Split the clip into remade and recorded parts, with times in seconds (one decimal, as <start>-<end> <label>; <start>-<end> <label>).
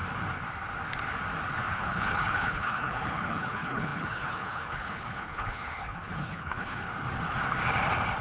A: 0.0-1.7 recorded; 1.7-6.9 remade; 6.9-8.2 recorded